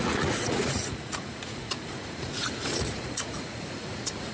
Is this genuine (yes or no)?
no